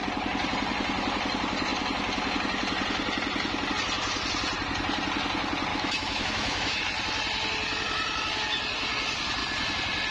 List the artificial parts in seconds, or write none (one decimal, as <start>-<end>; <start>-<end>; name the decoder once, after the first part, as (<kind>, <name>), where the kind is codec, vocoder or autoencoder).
5.7-6.8 (autoencoder, DAC-VAE)